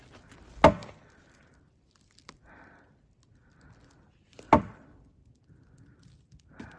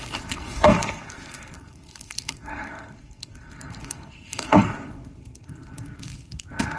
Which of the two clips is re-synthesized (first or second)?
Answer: second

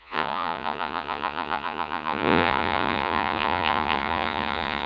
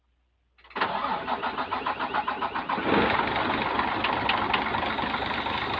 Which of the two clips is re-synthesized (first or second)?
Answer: first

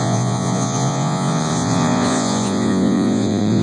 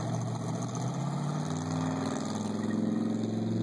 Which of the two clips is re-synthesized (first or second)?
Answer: first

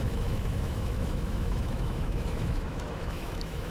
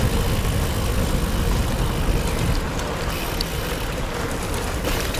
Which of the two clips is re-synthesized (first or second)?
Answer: first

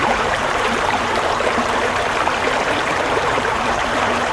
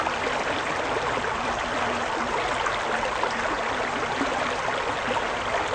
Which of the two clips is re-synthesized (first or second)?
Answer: first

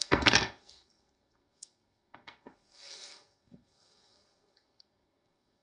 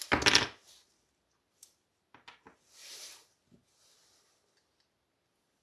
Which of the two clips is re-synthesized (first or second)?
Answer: first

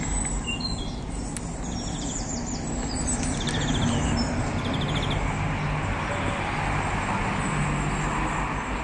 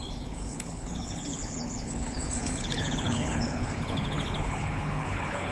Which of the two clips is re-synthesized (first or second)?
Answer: second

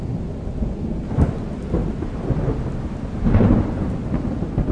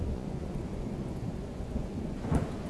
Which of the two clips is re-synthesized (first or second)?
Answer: second